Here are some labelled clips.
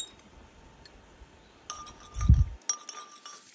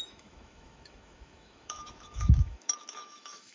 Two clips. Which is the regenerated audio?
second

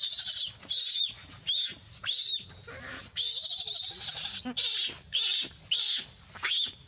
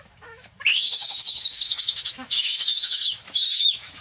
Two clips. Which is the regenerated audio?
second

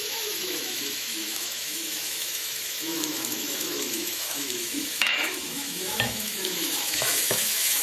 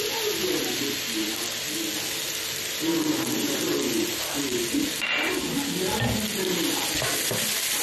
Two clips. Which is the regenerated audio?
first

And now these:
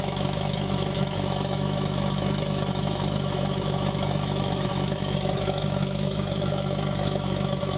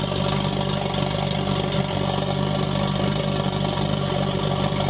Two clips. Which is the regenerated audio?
first